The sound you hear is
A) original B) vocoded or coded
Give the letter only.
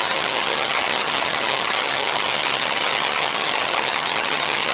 B